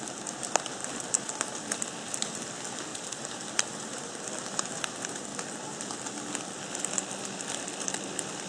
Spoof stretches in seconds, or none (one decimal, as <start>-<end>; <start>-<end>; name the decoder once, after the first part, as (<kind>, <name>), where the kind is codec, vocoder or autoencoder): 0.8-2.4 (vocoder, BigVGAN v2); 2.9-4.4